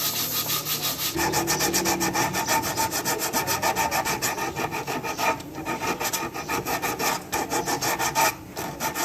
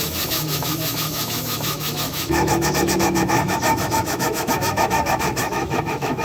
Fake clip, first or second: second